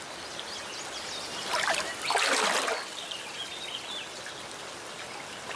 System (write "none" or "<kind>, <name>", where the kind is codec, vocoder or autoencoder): none